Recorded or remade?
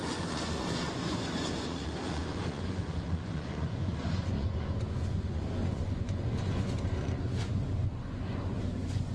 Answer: remade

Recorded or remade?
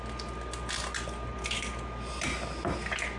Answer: recorded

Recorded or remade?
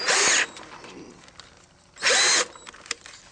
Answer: recorded